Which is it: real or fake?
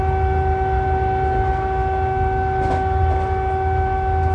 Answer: real